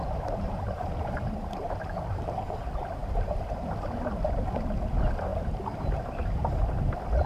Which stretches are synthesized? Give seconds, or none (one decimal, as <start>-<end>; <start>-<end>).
0.0-2.2